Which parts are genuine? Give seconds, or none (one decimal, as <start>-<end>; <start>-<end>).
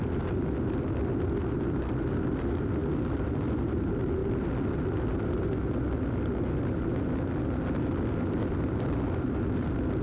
0.0-10.0